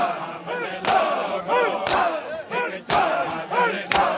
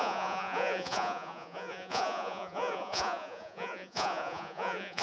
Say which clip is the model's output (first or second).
second